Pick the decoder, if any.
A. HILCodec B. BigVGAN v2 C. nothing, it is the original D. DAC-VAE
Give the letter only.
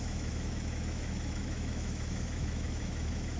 D